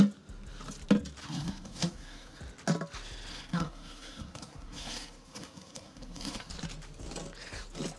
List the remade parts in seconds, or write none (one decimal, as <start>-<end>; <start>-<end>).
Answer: 1.2-2.4; 3.3-6.5